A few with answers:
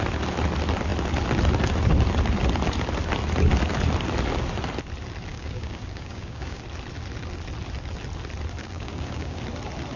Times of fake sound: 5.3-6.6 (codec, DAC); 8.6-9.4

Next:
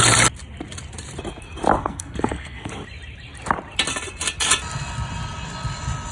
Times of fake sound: 1.8-2.7 (codec, SNAC)

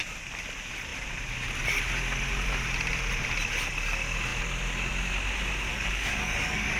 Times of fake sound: 5.7-6.8 (codec, DAC)